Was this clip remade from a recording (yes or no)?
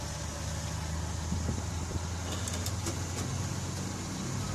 no